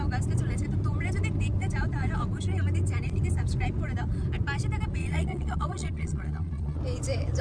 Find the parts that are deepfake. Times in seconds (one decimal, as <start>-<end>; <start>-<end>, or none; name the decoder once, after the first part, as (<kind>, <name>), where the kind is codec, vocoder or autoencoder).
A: 5.0-6.8 (vocoder, Vocos)

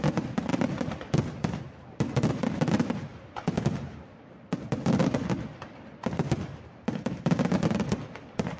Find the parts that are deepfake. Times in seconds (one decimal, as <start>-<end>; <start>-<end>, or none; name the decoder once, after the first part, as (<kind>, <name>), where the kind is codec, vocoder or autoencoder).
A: none

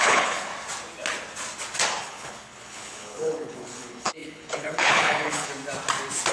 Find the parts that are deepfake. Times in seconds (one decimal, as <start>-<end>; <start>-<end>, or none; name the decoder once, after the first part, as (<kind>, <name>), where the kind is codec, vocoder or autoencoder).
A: 0.0-0.5 (codec, HILCodec); 2.0-5.5